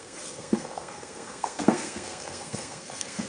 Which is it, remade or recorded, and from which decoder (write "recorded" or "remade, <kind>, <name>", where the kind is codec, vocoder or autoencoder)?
remade, codec, SNAC